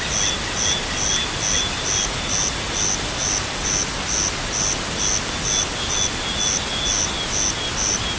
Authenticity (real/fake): real